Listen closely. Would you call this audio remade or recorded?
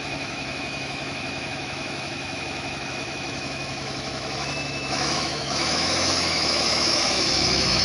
remade